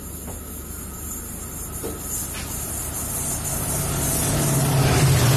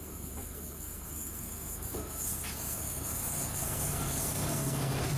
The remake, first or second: second